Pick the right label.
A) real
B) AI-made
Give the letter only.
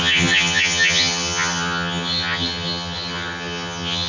B